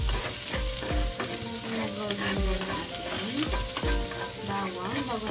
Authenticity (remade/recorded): recorded